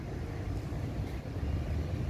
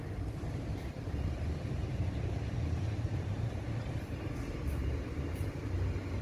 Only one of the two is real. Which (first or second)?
first